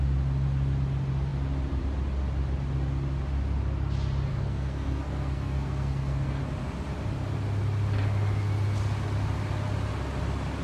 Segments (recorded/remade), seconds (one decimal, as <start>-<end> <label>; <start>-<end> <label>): 0.0-4.3 recorded; 4.3-6.4 remade; 6.4-10.6 recorded